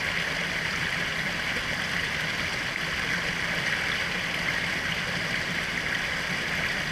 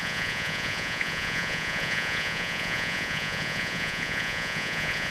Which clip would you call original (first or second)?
first